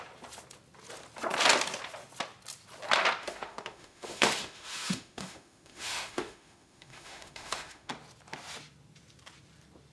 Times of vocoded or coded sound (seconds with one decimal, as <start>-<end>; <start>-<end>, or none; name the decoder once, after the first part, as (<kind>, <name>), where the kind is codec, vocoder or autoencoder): 3.2-7.9 (autoencoder, DAC-VAE)